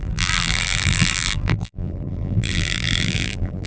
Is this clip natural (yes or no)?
no